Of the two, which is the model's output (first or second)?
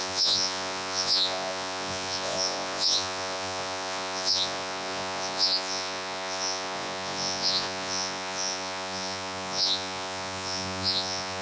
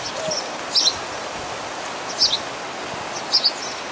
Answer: first